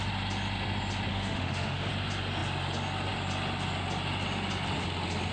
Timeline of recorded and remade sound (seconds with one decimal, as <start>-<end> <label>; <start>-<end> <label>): 0.0-1.1 recorded; 1.1-1.9 remade; 1.9-5.3 recorded